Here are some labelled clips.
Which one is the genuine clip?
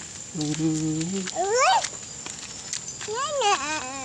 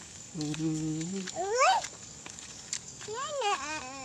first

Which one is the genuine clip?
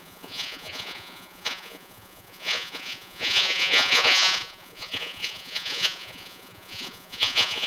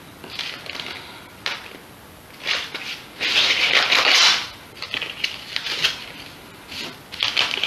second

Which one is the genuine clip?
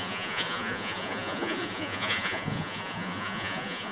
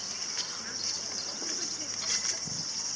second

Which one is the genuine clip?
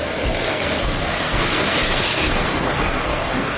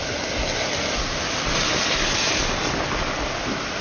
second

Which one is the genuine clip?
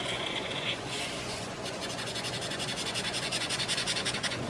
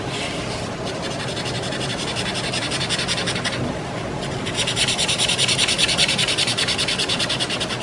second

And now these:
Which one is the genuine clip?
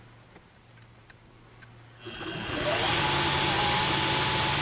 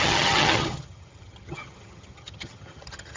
first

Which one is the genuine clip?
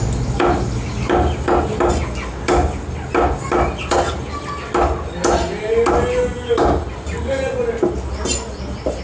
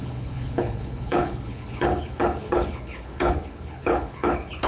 first